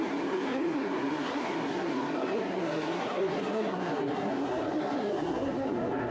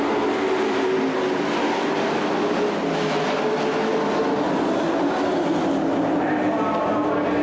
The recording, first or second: second